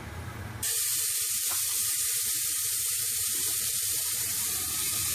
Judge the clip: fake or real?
fake